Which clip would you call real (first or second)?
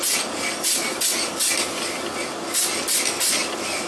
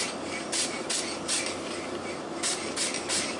first